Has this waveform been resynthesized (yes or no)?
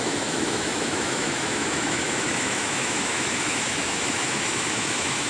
yes